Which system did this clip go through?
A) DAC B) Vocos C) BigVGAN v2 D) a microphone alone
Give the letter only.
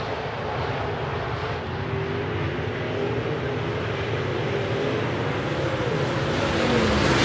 D